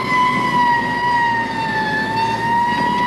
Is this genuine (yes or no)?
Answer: yes